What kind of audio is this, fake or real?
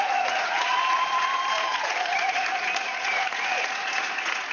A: fake